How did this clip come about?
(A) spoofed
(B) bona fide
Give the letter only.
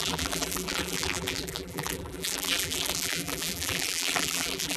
A